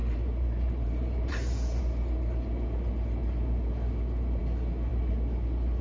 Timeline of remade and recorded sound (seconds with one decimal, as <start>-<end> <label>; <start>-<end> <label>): 0.0-1.8 remade; 1.8-5.8 recorded